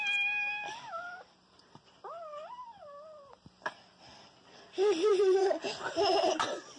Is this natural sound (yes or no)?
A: no